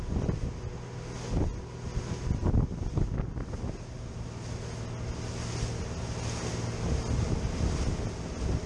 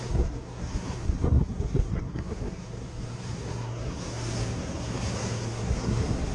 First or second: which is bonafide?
first